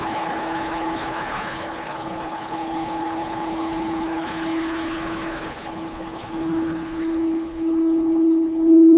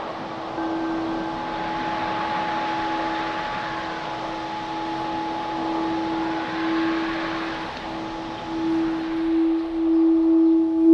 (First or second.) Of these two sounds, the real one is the second